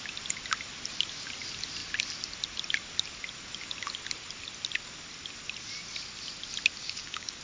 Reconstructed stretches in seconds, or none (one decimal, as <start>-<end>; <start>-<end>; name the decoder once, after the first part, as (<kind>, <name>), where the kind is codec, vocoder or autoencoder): 6.8-7.4 (codec, DAC)